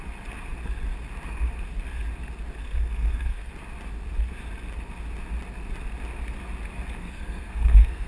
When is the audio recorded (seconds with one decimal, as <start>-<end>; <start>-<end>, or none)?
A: 0.0-2.6; 3.5-7.0